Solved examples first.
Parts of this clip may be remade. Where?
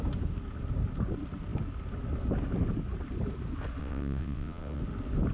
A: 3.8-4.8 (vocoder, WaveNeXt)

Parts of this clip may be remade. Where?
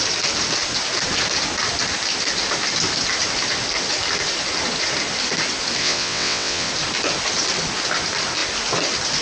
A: 5.8-6.7 (vocoder, WaveNeXt)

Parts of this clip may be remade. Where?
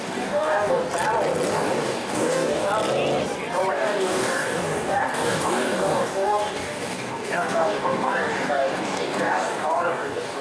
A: 0.0-0.8 (codec, DAC); 1.5-2.7; 3.7-10.4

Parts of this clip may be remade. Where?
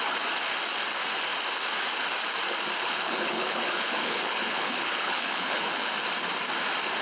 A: 2.8-5.9 (codec, HILCodec)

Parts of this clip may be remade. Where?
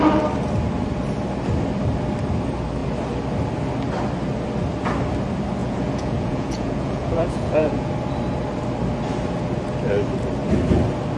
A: 5.6-7.9 (vocoder, Vocos)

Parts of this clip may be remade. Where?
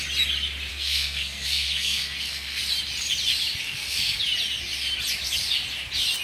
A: 0.7-2.6 (codec, SNAC); 3.6-4.2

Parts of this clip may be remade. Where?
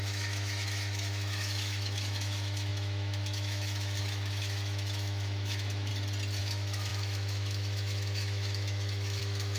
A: 0.0-5.9 (autoencoder, DAC-VAE); 6.4-9.6